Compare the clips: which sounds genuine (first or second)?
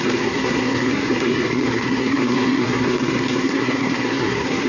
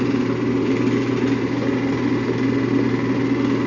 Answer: second